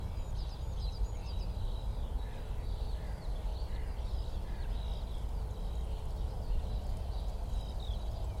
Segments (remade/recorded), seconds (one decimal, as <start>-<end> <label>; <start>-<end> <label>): 0.0-8.4 recorded

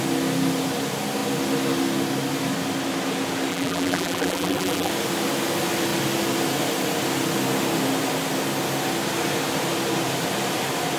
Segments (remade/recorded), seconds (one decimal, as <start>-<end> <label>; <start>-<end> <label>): 0.0-3.5 recorded; 3.5-4.9 remade; 4.9-11.0 recorded

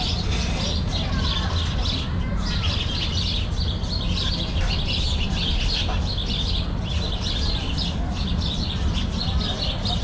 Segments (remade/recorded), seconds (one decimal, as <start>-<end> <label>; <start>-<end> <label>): 0.0-10.0 recorded

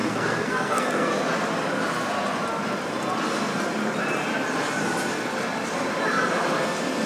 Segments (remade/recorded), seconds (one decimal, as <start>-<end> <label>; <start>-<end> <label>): 0.0-1.1 remade; 1.1-7.1 recorded

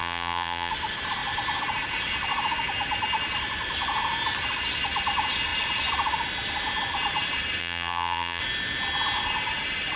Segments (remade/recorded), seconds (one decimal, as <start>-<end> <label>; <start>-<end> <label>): 0.0-0.7 remade; 0.7-7.6 recorded; 7.6-8.4 remade; 8.4-10.0 recorded

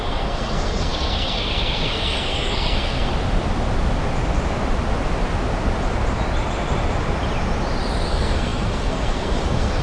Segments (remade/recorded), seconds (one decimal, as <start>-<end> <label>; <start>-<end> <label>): 0.0-3.1 remade; 3.1-8.1 recorded; 8.1-9.8 remade

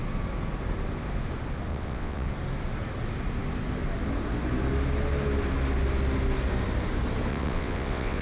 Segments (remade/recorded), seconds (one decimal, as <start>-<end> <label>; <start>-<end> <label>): 0.0-1.7 recorded; 1.7-2.3 remade; 2.3-7.3 recorded; 7.3-8.2 remade

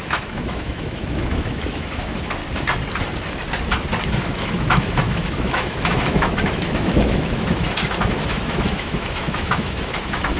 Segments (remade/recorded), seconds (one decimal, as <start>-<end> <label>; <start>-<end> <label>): 0.0-2.4 remade; 2.4-4.1 recorded; 4.1-10.4 remade